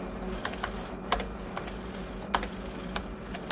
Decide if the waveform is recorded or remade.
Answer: recorded